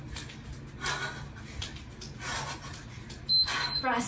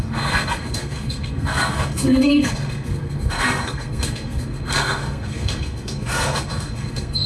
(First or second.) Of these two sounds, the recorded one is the first